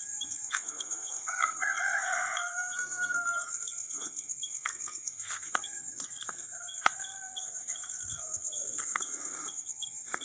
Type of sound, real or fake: fake